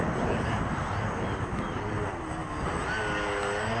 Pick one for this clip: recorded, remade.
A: recorded